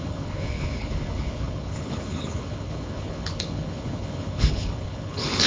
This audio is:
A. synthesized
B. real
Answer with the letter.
A